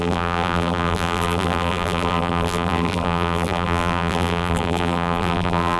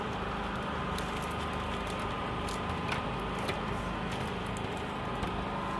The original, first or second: second